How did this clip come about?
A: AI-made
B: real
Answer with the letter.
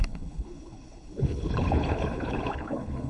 A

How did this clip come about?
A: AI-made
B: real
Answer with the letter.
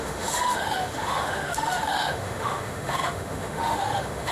A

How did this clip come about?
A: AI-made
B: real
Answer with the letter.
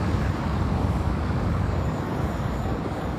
A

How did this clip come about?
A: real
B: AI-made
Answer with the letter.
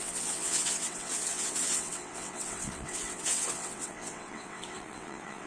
B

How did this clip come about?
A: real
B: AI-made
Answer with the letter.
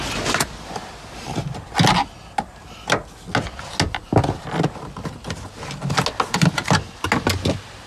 A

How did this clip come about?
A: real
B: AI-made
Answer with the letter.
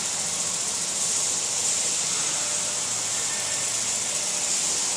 A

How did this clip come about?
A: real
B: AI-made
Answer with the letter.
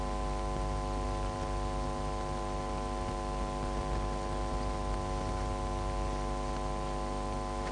A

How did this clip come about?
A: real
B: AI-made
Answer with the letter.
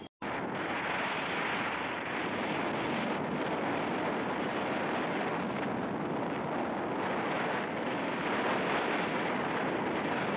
A